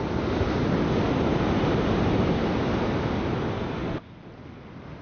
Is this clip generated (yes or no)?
no